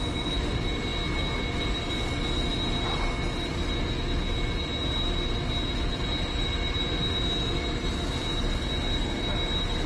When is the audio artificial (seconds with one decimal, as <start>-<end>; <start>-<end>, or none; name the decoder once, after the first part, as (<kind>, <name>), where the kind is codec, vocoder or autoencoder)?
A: none